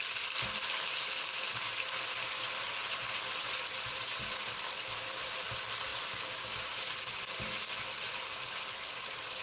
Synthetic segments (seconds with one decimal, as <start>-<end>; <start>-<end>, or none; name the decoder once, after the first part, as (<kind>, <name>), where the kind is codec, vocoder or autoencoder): none